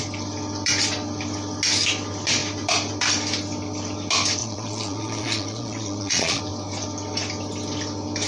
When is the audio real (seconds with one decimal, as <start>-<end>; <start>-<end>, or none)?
0.0-4.4; 6.4-8.3